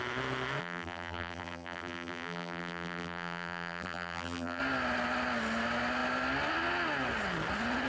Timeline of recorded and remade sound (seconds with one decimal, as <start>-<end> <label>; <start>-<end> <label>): 0.0-0.6 recorded; 0.6-4.6 remade; 4.6-7.9 recorded